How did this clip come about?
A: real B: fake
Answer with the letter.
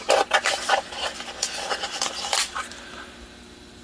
B